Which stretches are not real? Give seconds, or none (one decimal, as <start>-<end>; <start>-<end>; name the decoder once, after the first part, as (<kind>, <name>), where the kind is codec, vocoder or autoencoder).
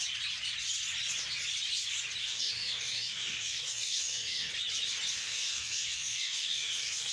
2.2-4.5 (codec, DAC); 5.2-7.1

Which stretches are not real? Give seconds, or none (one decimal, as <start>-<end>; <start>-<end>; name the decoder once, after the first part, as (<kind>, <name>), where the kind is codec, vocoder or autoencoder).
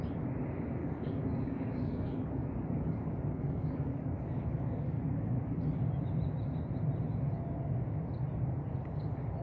0.8-5.6 (codec, DAC)